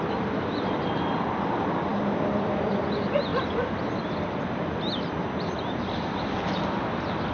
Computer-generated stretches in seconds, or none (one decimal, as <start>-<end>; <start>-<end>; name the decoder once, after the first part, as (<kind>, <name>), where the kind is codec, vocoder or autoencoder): none